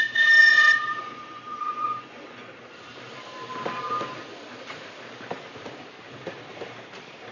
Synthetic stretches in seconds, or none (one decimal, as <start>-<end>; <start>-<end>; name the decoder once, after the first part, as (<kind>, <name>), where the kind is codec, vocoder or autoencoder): 0.4-2.5 (vocoder, Vocos)